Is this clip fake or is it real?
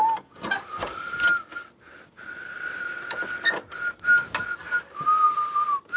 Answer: real